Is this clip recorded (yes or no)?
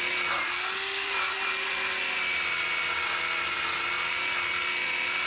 yes